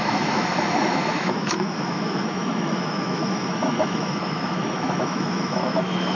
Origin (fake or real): fake